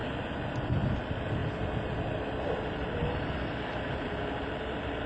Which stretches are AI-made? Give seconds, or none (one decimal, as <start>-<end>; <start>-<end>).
none